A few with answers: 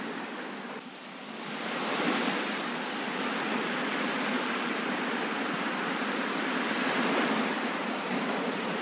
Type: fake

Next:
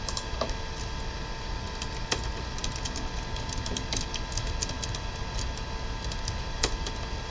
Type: real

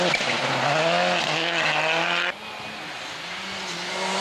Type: real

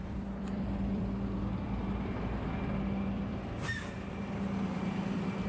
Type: fake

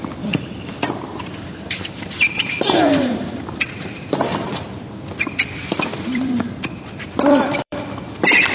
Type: fake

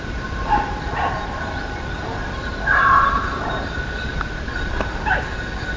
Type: real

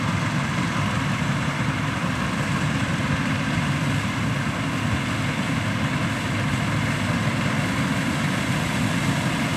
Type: real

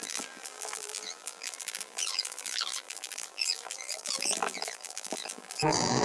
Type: fake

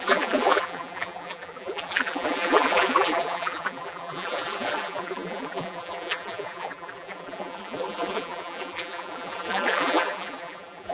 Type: fake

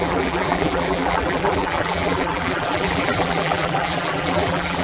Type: fake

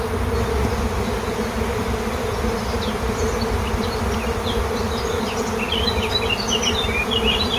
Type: real